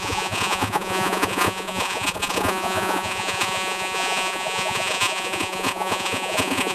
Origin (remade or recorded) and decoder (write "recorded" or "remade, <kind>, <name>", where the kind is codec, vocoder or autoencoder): remade, vocoder, Vocos